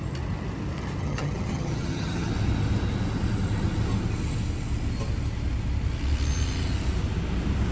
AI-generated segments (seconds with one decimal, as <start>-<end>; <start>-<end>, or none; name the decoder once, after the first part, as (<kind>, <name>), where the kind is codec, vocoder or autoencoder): 1.0-2.3 (vocoder, HiFi-GAN)